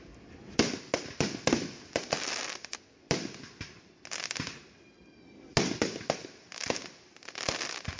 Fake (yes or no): no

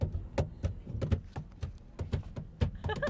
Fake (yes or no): no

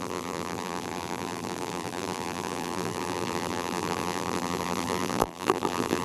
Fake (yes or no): yes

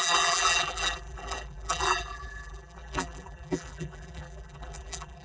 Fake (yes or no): yes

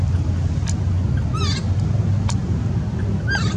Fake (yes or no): no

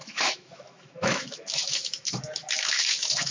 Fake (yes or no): yes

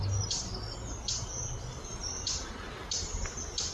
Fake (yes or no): no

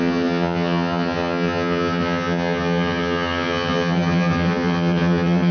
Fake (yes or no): yes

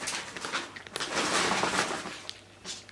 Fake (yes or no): no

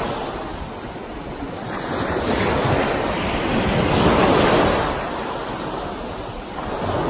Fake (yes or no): no